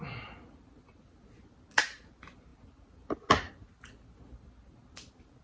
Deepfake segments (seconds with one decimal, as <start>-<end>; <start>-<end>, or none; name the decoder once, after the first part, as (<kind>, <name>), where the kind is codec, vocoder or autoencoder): none